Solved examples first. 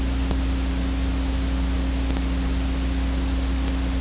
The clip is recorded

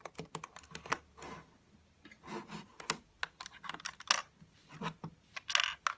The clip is recorded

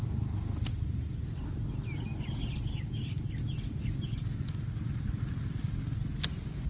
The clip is recorded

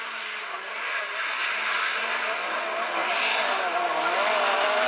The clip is recorded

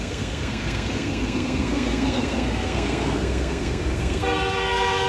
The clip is remade